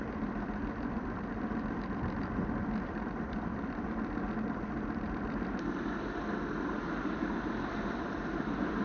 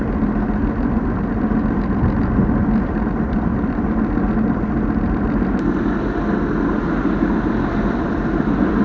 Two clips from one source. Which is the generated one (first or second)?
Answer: first